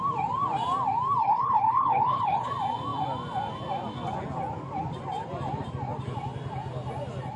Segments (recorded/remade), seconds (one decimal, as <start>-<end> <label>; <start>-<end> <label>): 0.0-1.2 recorded; 1.2-2.5 remade; 2.5-7.4 recorded